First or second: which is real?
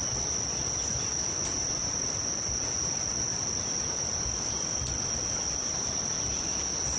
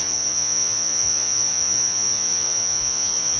first